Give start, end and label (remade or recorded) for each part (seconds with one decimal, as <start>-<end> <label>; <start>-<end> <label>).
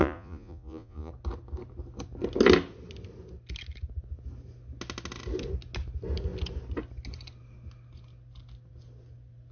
0.0-1.1 remade; 1.1-9.5 recorded